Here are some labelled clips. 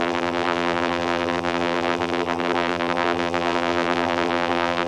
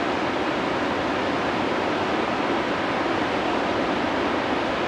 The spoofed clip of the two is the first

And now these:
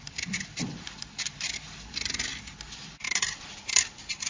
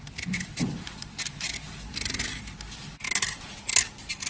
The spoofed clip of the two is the first